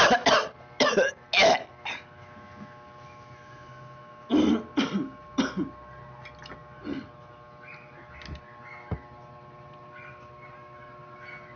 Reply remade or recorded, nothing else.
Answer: recorded